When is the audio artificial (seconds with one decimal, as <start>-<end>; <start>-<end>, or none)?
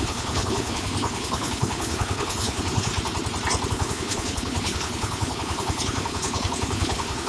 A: 0.0-2.9; 3.7-7.3